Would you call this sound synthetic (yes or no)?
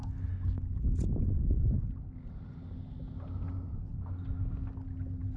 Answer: no